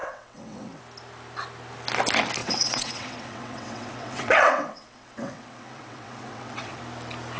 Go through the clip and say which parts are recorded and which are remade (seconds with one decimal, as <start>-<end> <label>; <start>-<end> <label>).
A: 0.0-0.8 remade; 0.8-2.4 recorded; 2.4-6.8 remade; 6.8-7.4 recorded